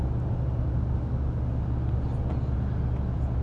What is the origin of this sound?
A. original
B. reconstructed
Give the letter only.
A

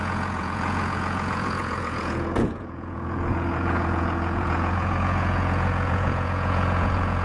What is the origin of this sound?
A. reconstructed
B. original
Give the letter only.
A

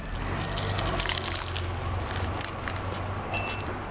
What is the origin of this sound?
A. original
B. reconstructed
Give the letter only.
A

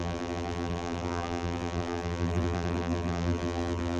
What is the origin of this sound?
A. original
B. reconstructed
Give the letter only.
B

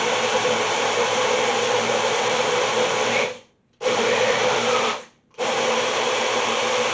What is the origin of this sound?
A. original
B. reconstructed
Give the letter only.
B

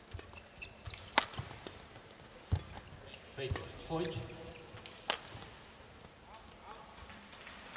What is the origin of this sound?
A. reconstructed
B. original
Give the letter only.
B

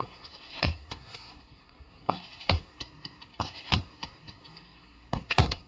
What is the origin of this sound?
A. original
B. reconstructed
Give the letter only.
B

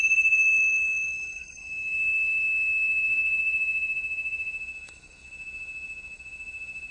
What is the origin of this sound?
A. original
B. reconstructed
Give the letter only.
B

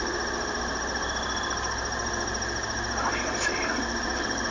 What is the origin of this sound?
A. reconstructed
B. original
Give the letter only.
B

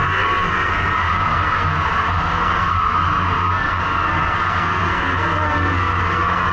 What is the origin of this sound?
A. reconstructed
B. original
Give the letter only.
A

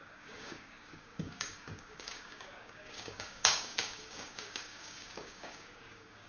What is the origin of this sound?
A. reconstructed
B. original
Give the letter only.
A